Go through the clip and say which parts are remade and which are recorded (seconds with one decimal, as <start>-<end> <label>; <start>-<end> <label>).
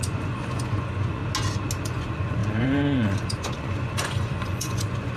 0.0-1.2 remade; 1.2-1.8 recorded; 1.8-5.2 remade